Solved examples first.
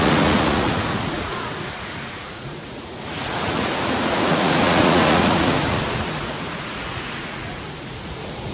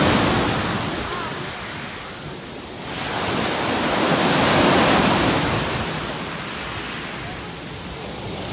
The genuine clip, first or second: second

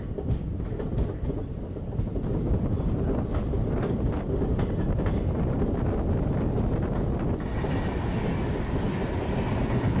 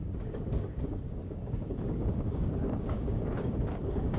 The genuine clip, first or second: first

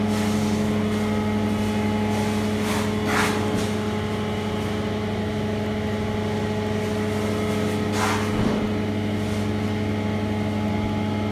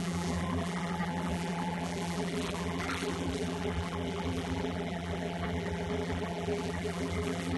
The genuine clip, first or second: first